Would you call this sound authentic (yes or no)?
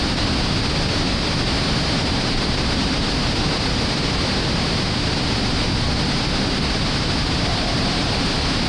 yes